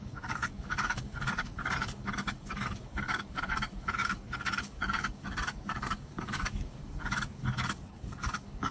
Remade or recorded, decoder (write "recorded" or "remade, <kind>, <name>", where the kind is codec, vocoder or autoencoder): remade, codec, DAC